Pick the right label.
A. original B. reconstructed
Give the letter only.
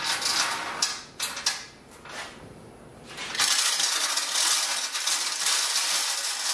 A